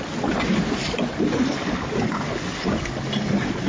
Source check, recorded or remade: recorded